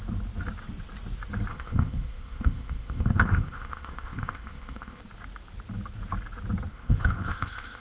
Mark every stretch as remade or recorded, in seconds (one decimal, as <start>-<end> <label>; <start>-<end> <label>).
0.0-1.5 recorded; 1.5-5.0 remade; 5.0-6.7 recorded; 6.7-7.8 remade